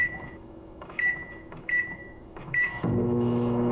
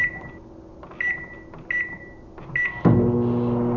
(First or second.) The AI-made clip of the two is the first